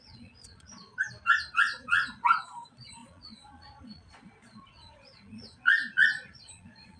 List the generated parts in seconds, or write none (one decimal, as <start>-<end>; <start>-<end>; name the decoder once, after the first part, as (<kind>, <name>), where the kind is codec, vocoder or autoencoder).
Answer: 0.0-0.9 (vocoder, Vocos); 1.5-7.0